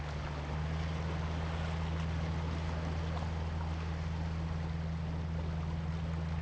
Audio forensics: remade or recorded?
recorded